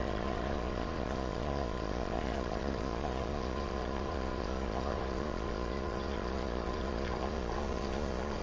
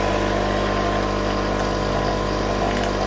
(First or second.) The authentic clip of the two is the second